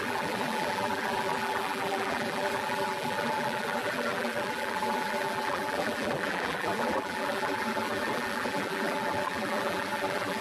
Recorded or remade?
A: remade